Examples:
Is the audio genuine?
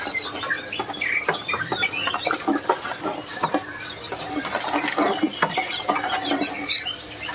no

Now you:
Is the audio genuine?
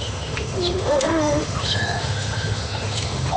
no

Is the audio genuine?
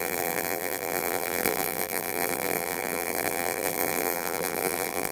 no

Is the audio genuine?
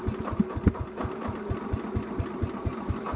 no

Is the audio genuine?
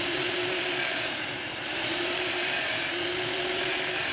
no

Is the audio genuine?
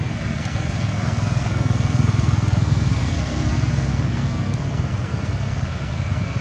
no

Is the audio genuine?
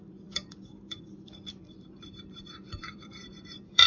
no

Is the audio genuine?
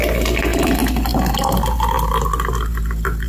yes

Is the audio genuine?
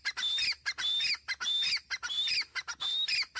yes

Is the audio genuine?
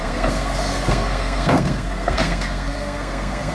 no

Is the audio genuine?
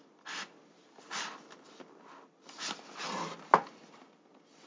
yes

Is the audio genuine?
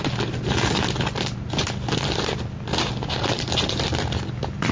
yes